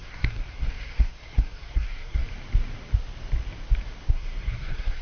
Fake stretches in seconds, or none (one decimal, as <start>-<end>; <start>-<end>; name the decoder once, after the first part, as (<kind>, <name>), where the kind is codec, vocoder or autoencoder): 0.0-2.2 (codec, SNAC); 4.1-5.0